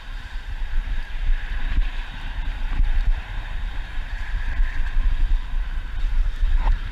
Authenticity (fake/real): fake